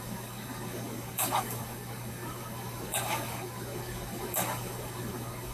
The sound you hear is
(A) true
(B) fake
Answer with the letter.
B